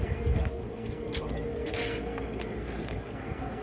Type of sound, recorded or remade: remade